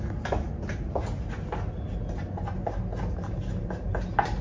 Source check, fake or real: real